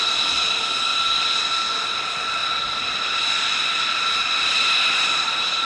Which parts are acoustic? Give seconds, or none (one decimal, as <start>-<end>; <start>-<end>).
0.0-5.6